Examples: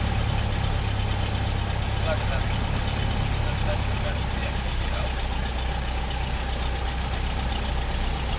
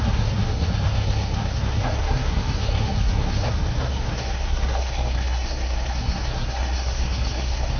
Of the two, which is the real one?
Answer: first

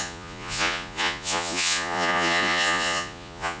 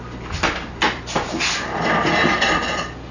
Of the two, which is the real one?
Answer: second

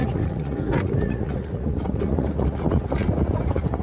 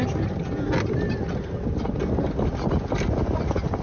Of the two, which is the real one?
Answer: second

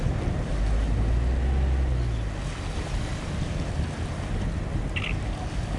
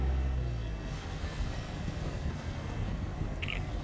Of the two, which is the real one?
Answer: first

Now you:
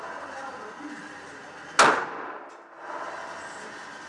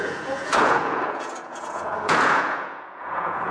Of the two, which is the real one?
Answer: first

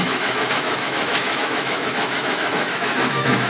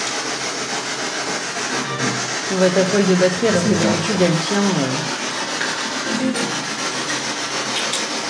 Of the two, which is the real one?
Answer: second